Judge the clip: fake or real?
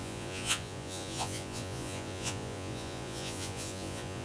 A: fake